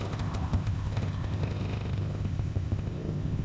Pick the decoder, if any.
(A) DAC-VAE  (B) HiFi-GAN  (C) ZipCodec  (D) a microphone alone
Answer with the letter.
C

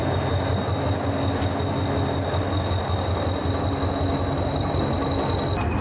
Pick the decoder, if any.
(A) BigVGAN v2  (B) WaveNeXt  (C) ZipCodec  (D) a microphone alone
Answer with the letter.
D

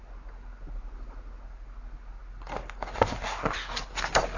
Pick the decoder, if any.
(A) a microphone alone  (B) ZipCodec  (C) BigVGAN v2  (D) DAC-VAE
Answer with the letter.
A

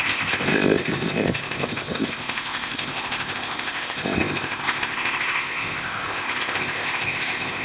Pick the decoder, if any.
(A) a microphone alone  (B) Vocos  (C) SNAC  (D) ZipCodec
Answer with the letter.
D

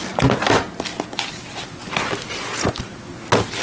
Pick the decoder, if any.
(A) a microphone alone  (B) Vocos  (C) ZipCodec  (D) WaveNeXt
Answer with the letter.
A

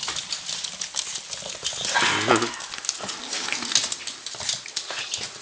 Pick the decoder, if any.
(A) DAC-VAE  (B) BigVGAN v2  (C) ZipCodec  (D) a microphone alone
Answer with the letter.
D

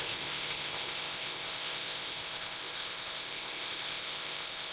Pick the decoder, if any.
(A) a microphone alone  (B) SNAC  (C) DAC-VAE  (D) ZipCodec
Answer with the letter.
D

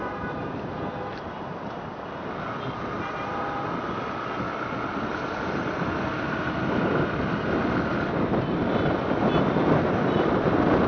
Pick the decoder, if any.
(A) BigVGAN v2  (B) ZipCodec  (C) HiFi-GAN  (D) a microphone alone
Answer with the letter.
D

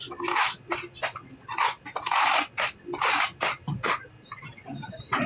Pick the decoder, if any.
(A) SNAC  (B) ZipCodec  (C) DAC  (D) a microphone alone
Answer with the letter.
D